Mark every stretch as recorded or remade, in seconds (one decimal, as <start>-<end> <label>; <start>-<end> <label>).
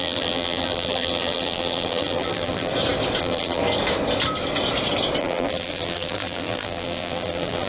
0.0-2.7 remade; 2.7-3.2 recorded; 3.2-3.6 remade; 3.6-5.2 recorded; 5.2-7.7 remade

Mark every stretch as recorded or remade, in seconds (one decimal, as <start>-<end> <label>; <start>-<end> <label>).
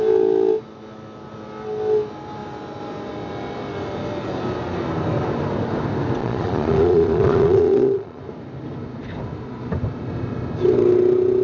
0.0-6.2 recorded; 6.2-8.2 remade; 8.2-11.4 recorded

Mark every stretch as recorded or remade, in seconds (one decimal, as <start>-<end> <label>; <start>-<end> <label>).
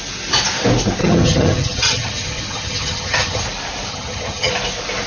0.0-1.0 recorded; 1.0-3.4 remade; 3.4-3.9 recorded; 3.9-4.5 remade; 4.5-5.1 recorded